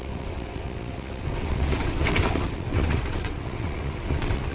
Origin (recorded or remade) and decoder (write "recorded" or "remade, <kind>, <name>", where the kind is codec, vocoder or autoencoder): remade, vocoder, WaveNeXt